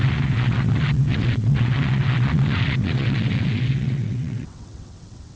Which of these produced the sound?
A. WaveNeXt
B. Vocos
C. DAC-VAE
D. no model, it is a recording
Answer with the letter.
A